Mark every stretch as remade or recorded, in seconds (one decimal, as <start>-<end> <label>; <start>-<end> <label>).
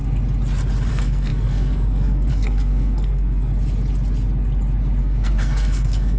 0.0-0.9 recorded; 0.9-3.5 remade; 3.5-5.0 recorded; 5.0-6.2 remade